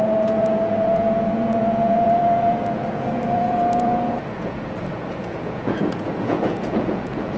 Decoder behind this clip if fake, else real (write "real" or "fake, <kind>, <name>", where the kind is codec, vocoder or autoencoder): fake, vocoder, Vocos